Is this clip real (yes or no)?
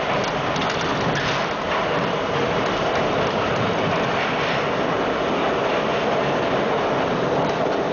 yes